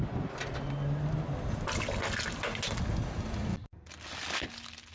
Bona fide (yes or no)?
yes